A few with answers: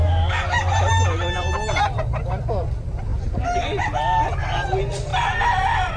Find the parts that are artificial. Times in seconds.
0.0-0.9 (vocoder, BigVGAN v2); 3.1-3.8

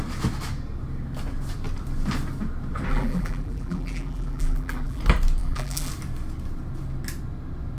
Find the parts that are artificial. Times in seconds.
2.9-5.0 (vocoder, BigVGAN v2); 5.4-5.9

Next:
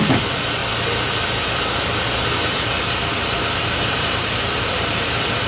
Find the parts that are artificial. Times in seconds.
0.0-0.6 (vocoder, BigVGAN v2); 3.9-5.5